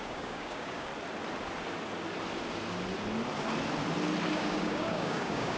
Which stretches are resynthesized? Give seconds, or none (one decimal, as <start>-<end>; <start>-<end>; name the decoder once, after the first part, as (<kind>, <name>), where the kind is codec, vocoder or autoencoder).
0.0-0.9 (codec, DAC); 4.3-5.6